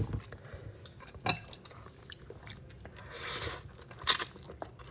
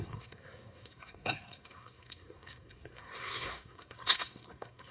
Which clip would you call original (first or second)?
first